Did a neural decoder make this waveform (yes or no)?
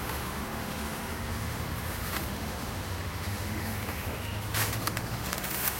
yes